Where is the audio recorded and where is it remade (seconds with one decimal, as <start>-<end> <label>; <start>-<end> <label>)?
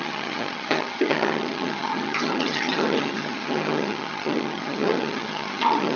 0.0-6.0 remade